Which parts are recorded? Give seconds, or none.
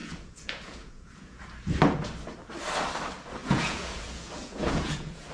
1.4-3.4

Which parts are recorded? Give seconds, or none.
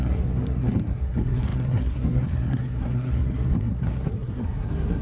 none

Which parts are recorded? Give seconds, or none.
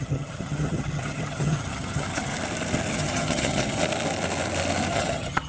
2.3-2.9; 3.8-4.9